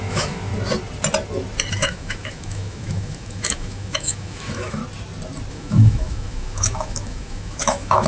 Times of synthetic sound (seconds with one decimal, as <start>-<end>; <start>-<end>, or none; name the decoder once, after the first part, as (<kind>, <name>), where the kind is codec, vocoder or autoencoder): 0.0-0.5 (autoencoder, DAC-VAE); 1.7-4.8; 5.5-8.1